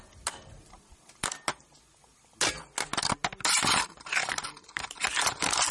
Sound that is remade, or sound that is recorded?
recorded